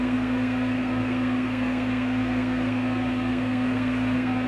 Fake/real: fake